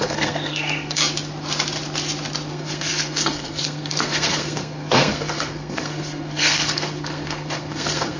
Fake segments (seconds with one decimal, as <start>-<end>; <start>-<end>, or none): 0.0-1.0; 2.5-8.2